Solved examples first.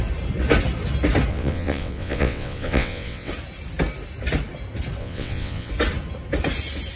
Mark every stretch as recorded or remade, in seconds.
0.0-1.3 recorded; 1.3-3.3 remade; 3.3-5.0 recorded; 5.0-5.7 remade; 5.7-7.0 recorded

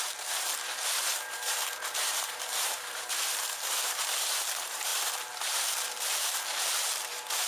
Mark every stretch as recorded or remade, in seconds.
0.0-7.5 remade

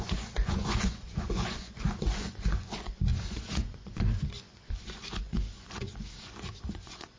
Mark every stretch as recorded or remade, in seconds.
0.0-7.2 remade

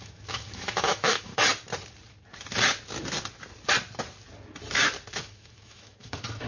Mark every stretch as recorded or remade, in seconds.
0.0-1.3 remade; 1.3-5.1 recorded; 5.1-6.5 remade

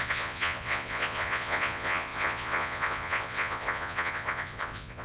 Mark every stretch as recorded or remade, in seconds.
0.0-5.0 remade

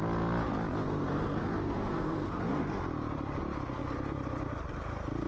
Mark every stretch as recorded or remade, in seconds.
0.0-0.8 recorded; 0.8-2.8 remade; 2.8-5.3 recorded